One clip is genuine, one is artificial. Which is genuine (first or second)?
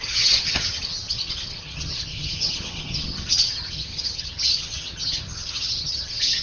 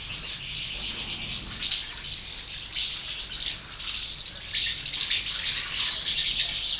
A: second